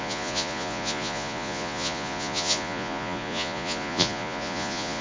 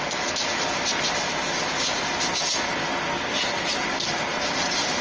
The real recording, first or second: second